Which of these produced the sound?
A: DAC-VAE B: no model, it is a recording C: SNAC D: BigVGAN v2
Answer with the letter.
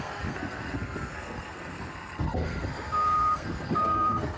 C